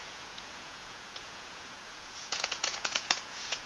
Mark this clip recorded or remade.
remade